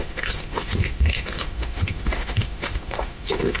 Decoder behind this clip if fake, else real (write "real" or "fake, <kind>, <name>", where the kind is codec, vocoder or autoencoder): fake, autoencoder, DAC-VAE